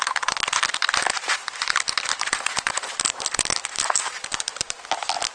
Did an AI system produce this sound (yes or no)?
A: no